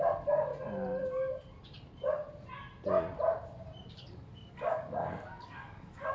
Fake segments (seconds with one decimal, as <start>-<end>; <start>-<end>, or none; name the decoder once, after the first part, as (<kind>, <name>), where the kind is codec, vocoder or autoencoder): 0.0-0.5 (codec, DAC); 3.9-6.1